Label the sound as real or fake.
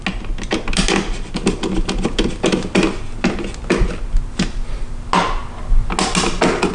real